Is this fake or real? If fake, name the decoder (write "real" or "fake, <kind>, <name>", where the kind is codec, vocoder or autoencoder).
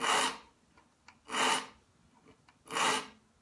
real